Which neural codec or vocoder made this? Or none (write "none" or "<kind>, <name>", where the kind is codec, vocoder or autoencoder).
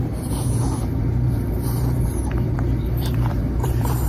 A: vocoder, BigVGAN v2